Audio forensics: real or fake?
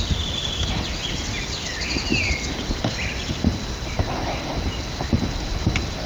real